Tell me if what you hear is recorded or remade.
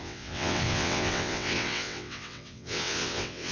remade